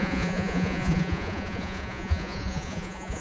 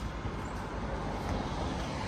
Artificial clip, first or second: first